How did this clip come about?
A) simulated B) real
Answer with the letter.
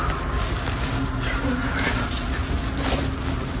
B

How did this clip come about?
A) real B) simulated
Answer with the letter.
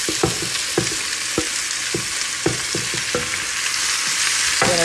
A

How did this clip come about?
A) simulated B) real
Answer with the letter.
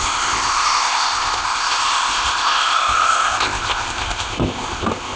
A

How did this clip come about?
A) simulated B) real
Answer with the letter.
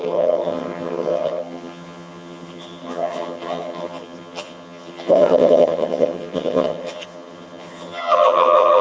A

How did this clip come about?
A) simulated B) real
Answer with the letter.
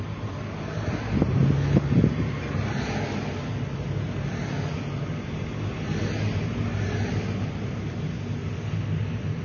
B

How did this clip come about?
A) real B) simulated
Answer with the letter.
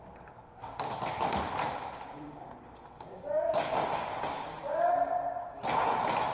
A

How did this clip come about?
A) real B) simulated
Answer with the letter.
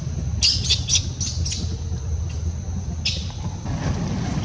A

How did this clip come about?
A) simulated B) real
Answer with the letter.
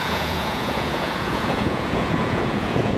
A